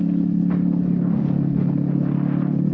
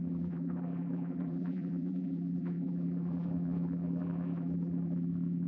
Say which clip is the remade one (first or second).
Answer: second